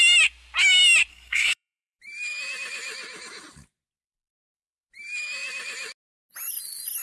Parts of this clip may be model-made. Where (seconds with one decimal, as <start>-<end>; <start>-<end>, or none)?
1.1-2.0